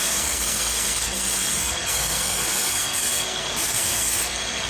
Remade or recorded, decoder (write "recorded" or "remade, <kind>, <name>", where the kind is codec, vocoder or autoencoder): remade, codec, SNAC